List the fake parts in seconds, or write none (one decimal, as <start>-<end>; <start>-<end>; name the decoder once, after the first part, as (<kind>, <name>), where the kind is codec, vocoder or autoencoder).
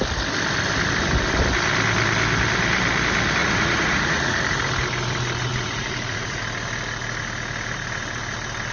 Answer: 3.4-4.4 (vocoder, Vocos); 5.5-6.4